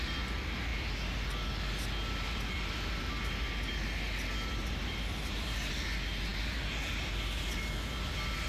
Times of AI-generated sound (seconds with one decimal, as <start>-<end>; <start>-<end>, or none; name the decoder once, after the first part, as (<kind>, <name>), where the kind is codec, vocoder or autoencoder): none

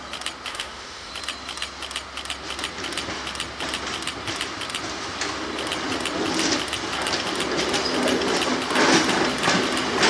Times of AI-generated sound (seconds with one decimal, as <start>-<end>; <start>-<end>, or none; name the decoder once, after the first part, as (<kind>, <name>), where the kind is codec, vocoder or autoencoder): 0.5-1.1 (autoencoder, DAC-VAE)

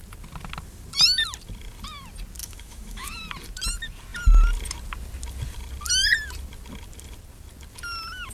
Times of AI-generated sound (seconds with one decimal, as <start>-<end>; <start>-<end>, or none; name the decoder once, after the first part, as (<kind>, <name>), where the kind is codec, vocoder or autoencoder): 2.4-3.2 (autoencoder, DAC-VAE)

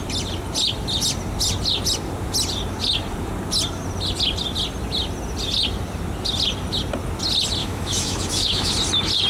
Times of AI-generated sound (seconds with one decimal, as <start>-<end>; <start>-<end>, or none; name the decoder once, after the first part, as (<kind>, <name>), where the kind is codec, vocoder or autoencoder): 7.6-8.7 (autoencoder, DAC-VAE)